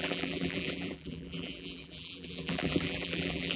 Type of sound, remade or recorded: remade